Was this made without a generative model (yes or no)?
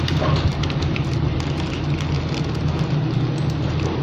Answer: yes